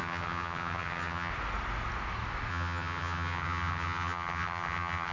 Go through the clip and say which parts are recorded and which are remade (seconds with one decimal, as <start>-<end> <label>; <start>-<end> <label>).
0.0-1.3 remade; 1.3-2.5 recorded; 2.5-5.1 remade